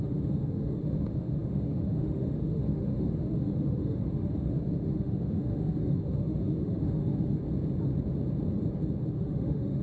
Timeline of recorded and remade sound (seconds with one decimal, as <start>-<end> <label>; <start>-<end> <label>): 0.0-7.4 remade; 7.4-9.1 recorded; 9.1-9.8 remade